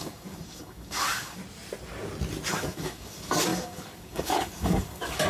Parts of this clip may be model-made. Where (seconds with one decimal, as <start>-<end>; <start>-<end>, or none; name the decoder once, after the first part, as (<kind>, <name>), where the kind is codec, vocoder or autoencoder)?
0.0-1.4 (codec, DAC); 2.5-5.3